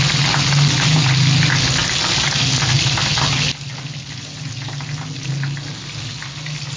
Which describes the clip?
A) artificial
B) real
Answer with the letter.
B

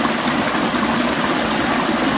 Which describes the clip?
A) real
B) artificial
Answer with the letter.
A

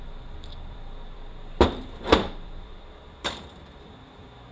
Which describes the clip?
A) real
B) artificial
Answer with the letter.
B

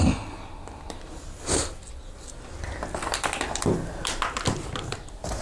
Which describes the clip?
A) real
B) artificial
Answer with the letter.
A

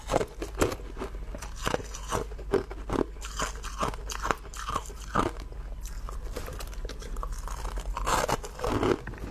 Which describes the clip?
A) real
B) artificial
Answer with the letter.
A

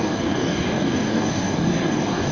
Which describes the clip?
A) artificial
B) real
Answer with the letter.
A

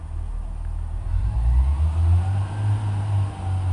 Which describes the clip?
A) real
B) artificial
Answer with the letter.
A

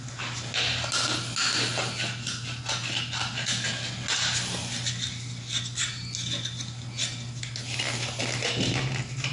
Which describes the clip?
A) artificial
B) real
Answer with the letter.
B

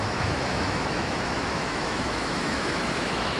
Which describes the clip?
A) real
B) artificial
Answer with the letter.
B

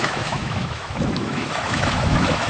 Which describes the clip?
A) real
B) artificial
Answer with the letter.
B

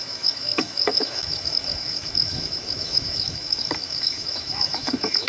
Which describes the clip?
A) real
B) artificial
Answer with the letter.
B